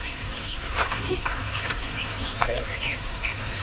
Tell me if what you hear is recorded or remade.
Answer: remade